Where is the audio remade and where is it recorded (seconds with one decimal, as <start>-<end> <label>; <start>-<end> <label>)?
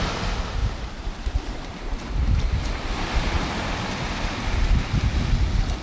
0.0-0.6 recorded; 0.6-3.7 remade; 3.7-5.8 recorded